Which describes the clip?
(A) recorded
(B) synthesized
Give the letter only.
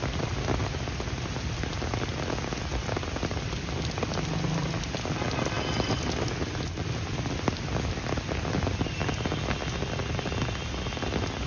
A